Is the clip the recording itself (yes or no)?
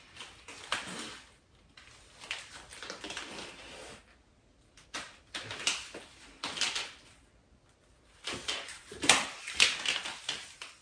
yes